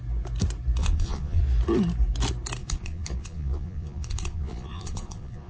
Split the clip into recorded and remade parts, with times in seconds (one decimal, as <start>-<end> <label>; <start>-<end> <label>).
0.0-0.8 recorded; 0.8-1.4 remade; 1.4-2.6 recorded; 2.6-5.5 remade